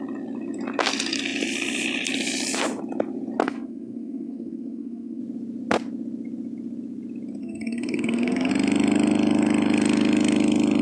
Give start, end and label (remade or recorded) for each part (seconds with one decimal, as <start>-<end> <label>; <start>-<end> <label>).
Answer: 0.0-3.4 recorded; 3.4-5.2 remade; 5.2-7.4 recorded; 7.4-8.5 remade; 8.5-10.8 recorded